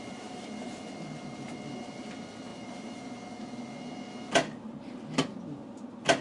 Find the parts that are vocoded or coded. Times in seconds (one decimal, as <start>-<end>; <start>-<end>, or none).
none